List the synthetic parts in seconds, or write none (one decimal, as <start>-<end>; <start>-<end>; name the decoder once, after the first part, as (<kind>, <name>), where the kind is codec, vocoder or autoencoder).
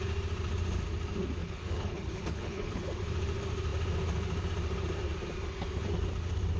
1.4-2.9 (codec, HILCodec)